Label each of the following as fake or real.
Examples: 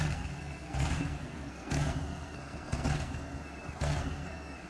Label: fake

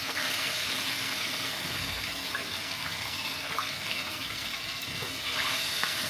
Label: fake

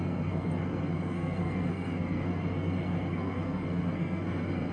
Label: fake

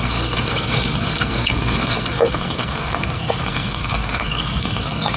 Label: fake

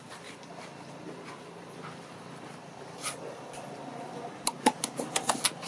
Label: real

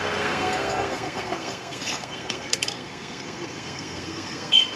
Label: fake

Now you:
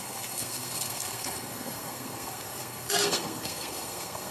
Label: fake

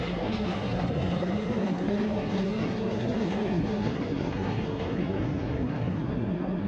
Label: fake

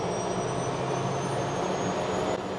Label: real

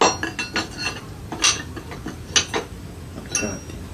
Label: real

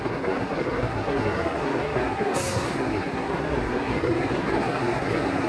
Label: fake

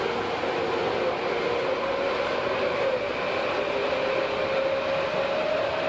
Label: real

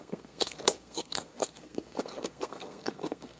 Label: fake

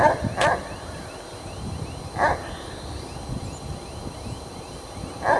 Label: real